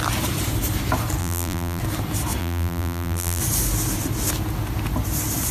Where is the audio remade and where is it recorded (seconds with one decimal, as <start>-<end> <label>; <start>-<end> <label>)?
0.0-1.2 recorded; 1.2-1.8 remade; 1.8-2.4 recorded; 2.4-3.4 remade; 3.4-5.5 recorded